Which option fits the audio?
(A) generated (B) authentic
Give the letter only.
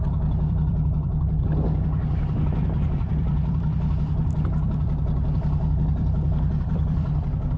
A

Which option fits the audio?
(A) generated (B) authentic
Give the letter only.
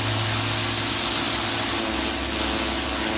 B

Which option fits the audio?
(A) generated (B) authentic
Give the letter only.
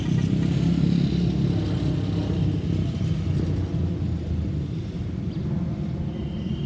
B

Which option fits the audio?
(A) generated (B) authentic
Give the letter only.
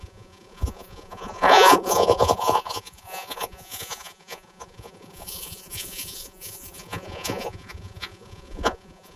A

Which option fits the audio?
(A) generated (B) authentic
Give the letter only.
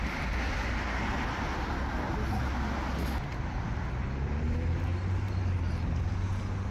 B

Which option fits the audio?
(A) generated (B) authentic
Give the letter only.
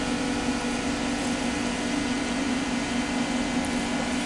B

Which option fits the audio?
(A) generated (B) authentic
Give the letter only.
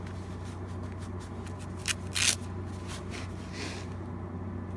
B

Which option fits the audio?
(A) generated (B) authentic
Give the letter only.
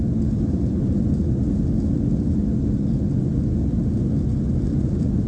B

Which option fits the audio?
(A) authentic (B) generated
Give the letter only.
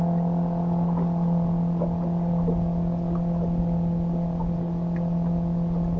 A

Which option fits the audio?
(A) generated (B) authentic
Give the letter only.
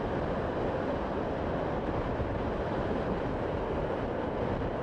B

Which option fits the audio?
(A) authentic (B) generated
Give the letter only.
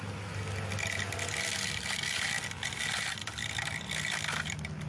A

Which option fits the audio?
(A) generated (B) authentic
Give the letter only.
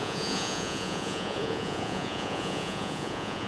A